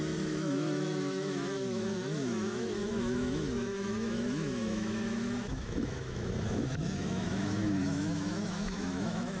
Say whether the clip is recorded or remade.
remade